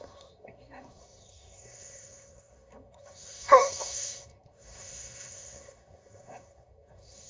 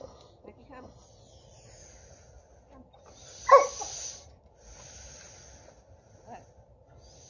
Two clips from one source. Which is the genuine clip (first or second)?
second